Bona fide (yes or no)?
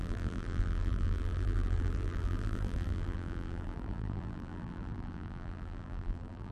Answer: no